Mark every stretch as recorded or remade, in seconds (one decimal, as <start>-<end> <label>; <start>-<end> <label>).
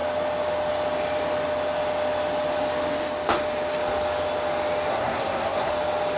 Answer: 0.0-4.9 recorded; 4.9-5.7 remade; 5.7-6.2 recorded